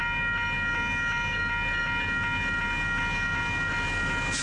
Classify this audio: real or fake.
real